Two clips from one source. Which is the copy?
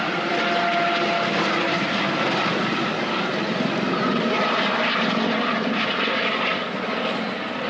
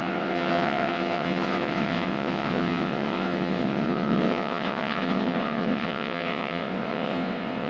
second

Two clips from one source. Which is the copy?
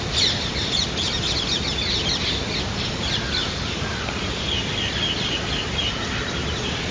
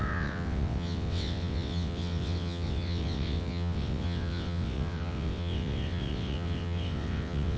second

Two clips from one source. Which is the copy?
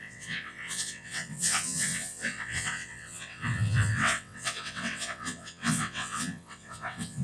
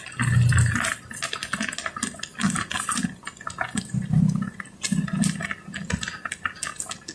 first